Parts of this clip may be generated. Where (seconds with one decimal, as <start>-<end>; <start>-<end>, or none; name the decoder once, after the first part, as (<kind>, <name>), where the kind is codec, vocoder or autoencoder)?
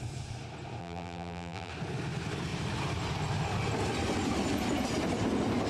0.8-1.7 (vocoder, BigVGAN v2)